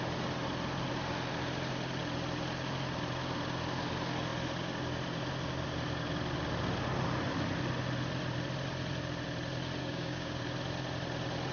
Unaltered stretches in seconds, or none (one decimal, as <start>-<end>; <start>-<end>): 0.0-9.8; 10.4-11.5